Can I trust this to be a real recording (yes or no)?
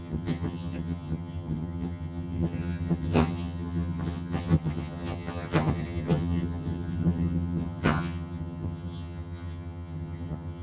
no